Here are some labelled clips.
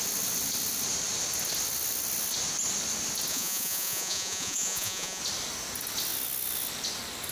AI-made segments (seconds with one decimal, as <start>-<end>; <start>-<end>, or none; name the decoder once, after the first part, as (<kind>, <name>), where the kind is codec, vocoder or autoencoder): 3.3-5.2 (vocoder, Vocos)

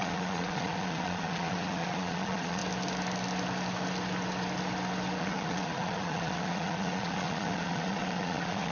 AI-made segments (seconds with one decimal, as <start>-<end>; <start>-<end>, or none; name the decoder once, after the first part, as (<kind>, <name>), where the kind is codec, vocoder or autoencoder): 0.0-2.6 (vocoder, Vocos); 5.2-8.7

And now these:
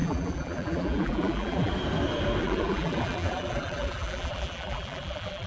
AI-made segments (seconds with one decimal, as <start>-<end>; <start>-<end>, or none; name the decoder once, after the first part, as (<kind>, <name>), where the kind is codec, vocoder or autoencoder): 0.0-1.7 (vocoder, BigVGAN v2); 2.4-5.5